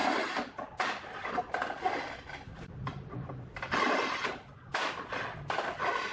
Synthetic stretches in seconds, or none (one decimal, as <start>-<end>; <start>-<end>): none